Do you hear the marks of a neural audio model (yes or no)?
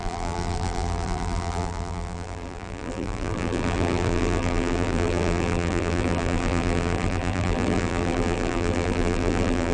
yes